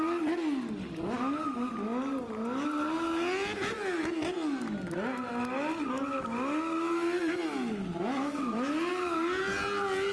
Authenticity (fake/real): real